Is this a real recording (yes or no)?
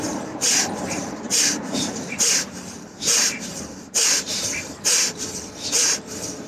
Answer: no